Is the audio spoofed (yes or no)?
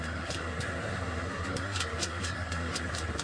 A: yes